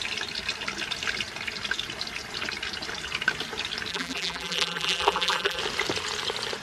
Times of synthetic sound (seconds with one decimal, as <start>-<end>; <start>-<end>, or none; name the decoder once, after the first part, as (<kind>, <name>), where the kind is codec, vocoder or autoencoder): 3.9-5.6 (vocoder, BigVGAN v2)